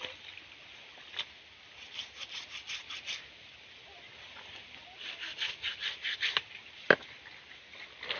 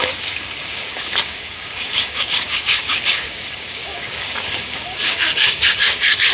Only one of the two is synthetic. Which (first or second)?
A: second